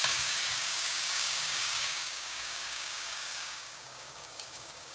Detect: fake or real fake